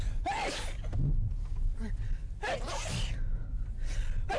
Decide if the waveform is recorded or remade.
recorded